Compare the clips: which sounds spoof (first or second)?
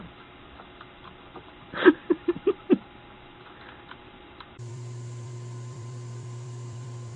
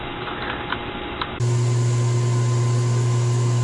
first